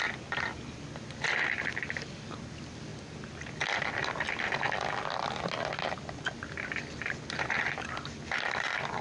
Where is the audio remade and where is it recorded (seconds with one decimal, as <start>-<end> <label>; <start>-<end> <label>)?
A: 0.0-9.0 recorded